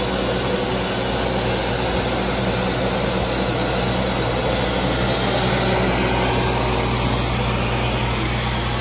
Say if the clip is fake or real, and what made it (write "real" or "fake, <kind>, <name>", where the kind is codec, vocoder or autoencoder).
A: real